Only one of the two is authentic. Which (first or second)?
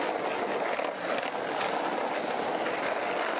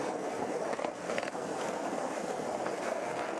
first